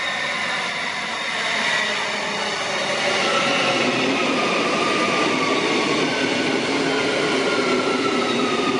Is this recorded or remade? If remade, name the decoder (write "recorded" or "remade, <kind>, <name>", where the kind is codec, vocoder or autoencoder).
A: recorded